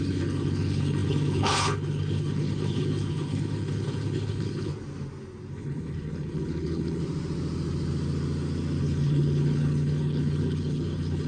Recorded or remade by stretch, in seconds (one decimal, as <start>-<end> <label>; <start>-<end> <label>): 0.0-4.7 remade; 4.7-5.5 recorded; 5.5-7.0 remade; 7.0-8.8 recorded; 8.8-11.3 remade